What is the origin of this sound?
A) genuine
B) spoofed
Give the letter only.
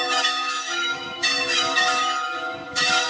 B